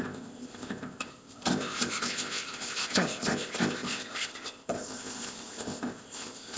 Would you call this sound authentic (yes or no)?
no